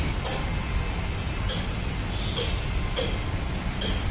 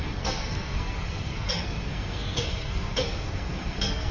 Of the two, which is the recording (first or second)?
first